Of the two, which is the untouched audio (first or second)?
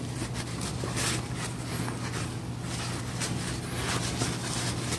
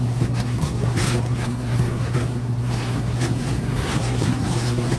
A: first